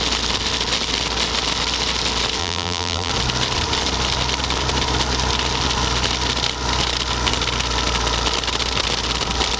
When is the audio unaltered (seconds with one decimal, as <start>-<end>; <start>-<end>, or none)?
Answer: 0.0-2.4; 3.1-9.6